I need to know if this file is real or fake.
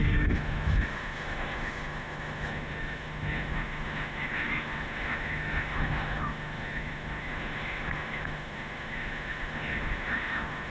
fake